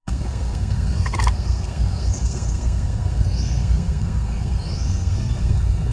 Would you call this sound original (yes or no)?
no